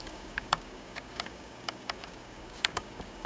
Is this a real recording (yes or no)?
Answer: no